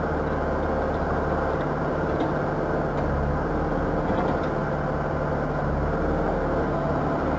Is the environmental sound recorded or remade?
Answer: recorded